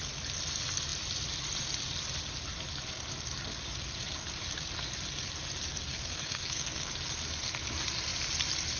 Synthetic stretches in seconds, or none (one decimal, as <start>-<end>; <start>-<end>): 5.9-6.9